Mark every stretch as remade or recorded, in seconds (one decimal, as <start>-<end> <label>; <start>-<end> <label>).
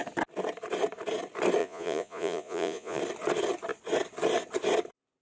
0.0-1.6 recorded; 1.6-3.0 remade; 3.0-5.2 recorded